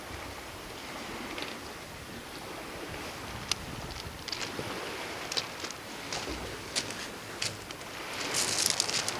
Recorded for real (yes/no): yes